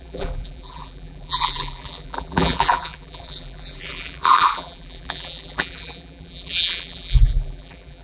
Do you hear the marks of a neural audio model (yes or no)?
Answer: yes